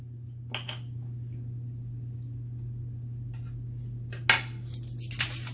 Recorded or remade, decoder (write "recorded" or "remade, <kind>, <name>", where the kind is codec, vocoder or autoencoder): recorded